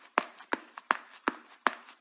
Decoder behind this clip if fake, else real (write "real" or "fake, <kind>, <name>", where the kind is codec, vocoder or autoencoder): real